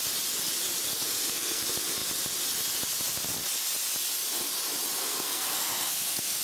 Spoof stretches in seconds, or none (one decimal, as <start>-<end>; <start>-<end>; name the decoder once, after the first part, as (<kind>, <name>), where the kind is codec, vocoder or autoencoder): 0.9-1.6 (codec, SNAC); 5.0-6.4